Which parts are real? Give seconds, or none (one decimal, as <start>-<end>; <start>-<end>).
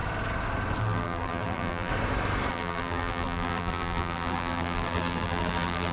0.0-0.8; 1.9-2.5